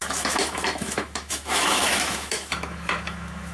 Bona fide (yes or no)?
no